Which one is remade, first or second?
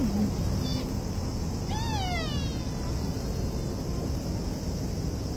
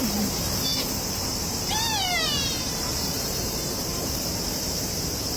second